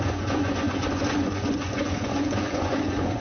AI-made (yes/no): yes